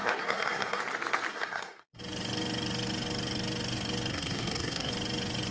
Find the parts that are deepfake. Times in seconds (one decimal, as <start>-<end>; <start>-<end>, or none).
0.0-0.8; 1.3-2.0; 4.1-4.9